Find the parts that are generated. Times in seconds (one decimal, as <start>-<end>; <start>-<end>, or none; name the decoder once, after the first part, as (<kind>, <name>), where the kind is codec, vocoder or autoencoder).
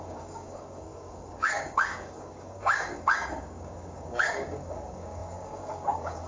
0.0-6.3 (codec, DAC)